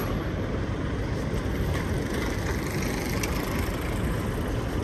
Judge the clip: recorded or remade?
recorded